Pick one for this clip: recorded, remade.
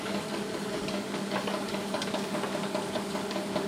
remade